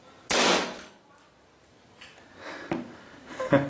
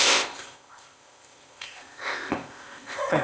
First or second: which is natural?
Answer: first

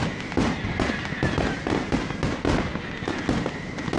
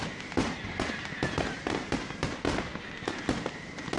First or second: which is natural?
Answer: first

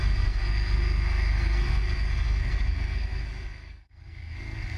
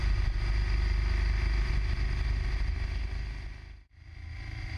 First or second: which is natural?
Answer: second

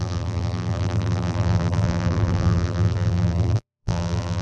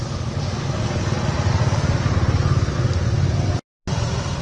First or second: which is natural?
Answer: second